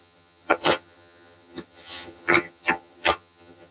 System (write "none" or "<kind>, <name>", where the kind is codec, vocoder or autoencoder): vocoder, HiFi-GAN